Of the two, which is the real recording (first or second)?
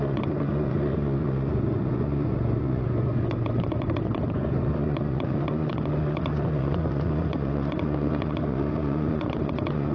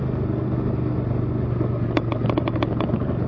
second